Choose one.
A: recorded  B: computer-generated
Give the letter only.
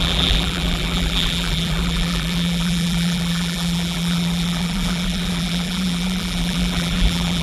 B